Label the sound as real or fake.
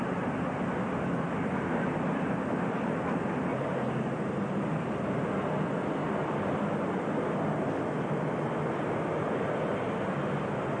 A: real